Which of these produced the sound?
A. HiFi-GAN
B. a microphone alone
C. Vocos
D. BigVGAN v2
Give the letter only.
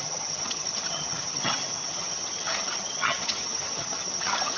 A